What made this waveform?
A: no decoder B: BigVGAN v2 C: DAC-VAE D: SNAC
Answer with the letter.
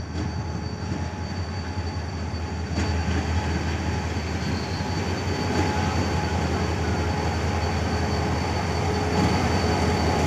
A